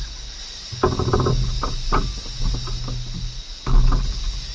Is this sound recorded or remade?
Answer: recorded